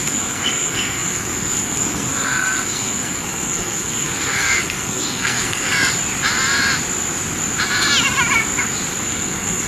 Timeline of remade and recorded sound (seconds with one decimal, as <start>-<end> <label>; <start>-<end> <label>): 0.0-5.7 remade; 5.7-9.0 recorded; 9.0-9.7 remade